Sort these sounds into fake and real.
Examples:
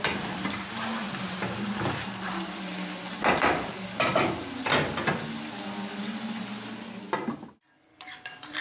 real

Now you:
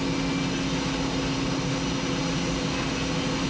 real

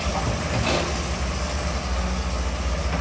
real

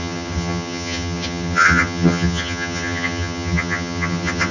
fake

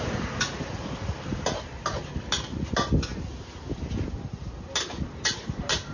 real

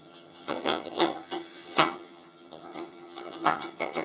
fake